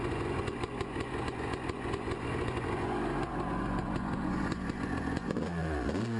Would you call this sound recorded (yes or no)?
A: no